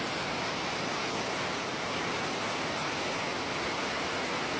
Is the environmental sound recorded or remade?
recorded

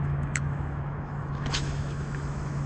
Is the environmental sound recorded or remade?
remade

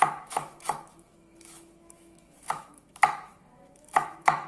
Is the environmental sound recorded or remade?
remade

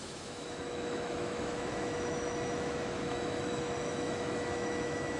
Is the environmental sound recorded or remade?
remade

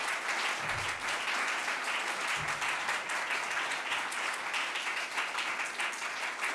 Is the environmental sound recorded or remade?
recorded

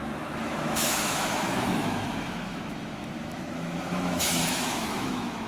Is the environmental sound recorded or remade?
remade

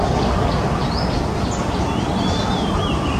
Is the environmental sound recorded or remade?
recorded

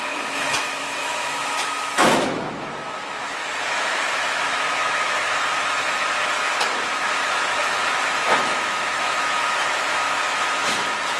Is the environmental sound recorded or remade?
remade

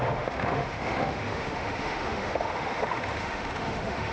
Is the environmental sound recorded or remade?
remade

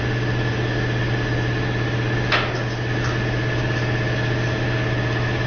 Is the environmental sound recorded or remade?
recorded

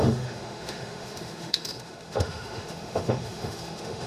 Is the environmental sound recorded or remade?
remade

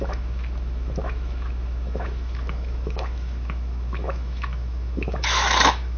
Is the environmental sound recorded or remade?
remade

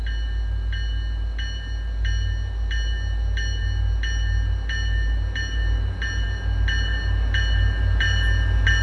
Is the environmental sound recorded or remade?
recorded